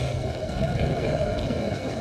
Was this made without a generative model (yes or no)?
no